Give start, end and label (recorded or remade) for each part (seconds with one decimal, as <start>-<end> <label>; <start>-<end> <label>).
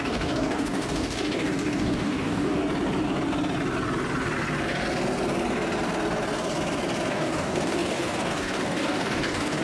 0.0-2.6 remade; 2.6-7.1 recorded; 7.1-9.6 remade